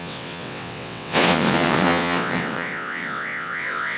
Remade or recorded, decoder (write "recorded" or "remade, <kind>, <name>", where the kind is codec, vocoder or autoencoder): remade, vocoder, WaveNeXt